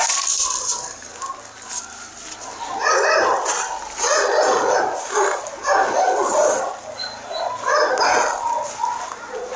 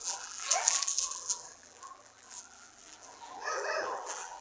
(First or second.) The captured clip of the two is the first